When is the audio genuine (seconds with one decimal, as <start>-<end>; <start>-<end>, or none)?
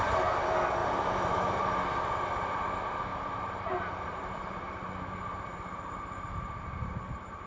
0.0-0.8; 1.6-3.1